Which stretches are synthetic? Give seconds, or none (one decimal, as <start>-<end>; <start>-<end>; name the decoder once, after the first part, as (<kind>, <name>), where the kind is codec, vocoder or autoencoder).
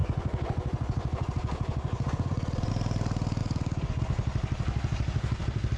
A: 0.0-2.7 (vocoder, Vocos); 3.4-4.0